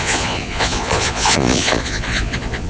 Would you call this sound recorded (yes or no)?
no